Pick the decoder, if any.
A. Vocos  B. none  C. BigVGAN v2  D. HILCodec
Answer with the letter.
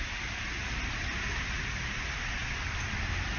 B